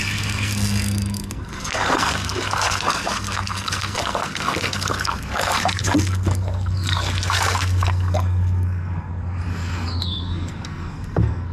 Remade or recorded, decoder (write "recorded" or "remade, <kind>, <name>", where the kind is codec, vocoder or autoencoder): remade, codec, SNAC